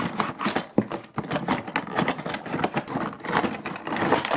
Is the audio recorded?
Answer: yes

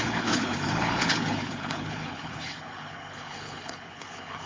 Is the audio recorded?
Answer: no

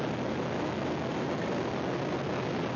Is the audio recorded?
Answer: yes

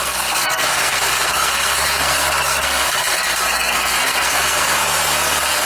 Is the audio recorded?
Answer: no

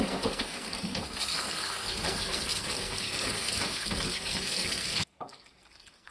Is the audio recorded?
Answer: no